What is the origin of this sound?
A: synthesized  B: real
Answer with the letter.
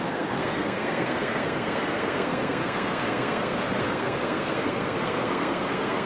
A